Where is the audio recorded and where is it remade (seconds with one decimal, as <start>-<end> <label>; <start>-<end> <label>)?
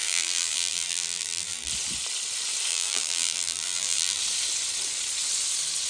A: 0.0-1.7 remade; 1.7-2.7 recorded; 2.7-4.2 remade; 4.2-5.9 recorded